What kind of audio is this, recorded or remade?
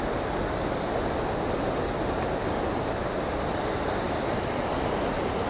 recorded